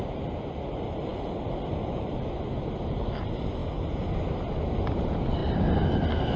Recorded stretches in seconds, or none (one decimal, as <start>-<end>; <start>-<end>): 0.0-6.4